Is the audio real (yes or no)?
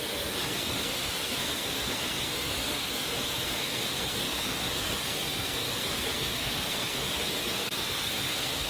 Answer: no